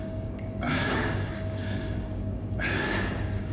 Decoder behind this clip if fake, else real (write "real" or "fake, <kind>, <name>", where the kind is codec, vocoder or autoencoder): fake, codec, DAC